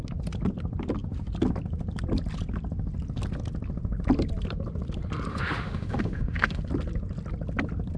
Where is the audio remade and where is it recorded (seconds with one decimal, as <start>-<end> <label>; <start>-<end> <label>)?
0.0-5.3 recorded; 5.3-6.6 remade; 6.6-8.0 recorded